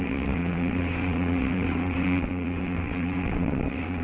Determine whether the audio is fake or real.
fake